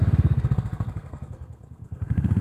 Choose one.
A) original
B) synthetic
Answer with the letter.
B